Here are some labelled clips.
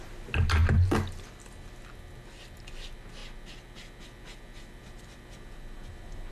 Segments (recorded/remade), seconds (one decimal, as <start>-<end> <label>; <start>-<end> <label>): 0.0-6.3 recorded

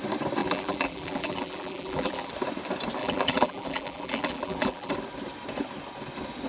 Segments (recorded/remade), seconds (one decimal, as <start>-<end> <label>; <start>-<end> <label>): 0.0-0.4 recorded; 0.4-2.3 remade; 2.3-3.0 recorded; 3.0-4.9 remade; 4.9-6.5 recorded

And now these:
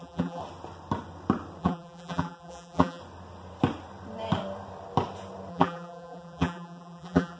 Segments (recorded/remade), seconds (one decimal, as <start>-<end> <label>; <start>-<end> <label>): 0.0-0.4 remade; 0.4-1.6 recorded; 1.6-3.0 remade; 3.0-5.5 recorded; 5.5-7.4 remade